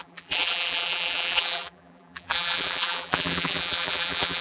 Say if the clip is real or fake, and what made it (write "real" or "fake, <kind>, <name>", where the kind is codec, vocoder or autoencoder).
fake, vocoder, BigVGAN v2